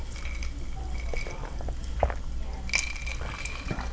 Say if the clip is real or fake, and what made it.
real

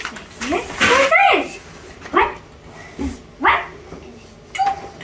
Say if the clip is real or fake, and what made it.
real